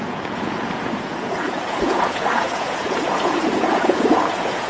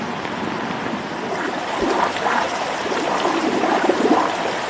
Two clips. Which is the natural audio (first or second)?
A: second